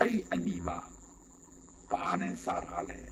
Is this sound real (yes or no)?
no